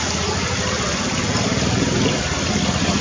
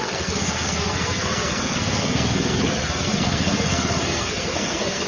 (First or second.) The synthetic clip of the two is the second